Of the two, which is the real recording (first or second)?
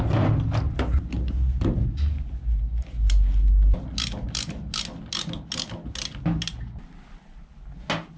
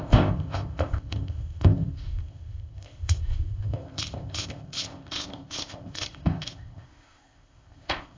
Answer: first